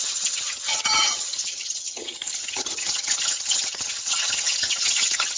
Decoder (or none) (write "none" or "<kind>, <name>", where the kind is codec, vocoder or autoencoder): vocoder, HiFi-GAN